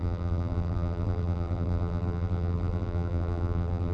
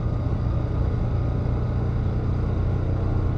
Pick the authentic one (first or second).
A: second